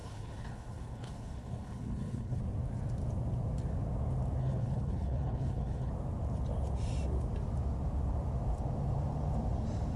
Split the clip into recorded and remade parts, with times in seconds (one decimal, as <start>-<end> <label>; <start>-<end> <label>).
0.0-2.4 remade; 2.4-4.4 recorded; 4.4-5.9 remade; 5.9-10.0 recorded